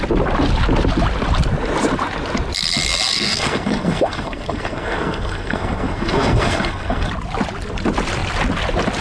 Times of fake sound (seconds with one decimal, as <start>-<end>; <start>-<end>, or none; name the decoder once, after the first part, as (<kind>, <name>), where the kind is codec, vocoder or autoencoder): 3.1-7.1 (codec, SNAC)